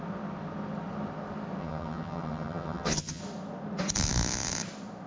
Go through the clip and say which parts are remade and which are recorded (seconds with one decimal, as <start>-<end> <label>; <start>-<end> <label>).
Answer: 0.0-1.6 recorded; 1.6-3.2 remade; 3.2-5.1 recorded